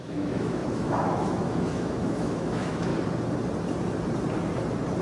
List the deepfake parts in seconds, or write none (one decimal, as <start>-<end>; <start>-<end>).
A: 0.0-2.9

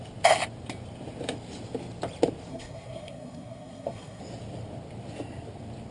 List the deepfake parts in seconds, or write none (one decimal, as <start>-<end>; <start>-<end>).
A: 2.5-4.2

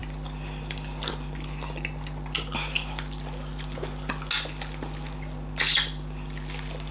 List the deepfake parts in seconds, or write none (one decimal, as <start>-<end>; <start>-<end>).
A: none

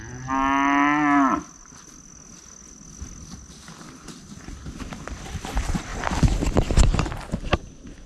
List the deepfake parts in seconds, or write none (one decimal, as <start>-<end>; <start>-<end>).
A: none

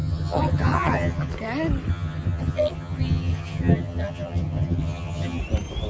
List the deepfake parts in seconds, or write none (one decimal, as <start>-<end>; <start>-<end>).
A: 0.0-1.3; 1.9-5.4

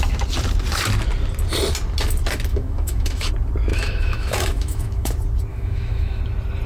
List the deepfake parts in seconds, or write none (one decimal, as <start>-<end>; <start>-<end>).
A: 2.5-3.3; 3.7-5.1; 5.5-6.2

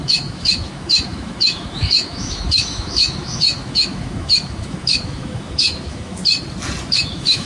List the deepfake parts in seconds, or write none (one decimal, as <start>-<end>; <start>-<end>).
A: 0.0-6.2; 6.9-7.4